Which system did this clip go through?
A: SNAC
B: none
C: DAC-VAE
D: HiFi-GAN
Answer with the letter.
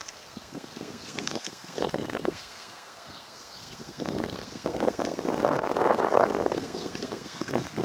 A